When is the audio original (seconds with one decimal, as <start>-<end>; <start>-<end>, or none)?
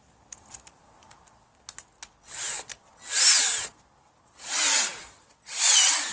0.0-6.1